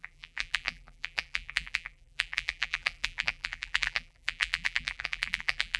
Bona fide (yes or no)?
no